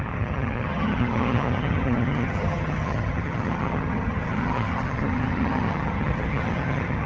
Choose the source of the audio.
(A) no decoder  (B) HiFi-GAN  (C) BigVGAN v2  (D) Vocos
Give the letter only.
B